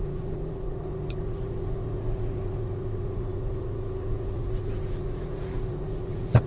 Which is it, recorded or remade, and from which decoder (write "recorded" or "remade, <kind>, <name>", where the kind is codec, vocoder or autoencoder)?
remade, vocoder, Vocos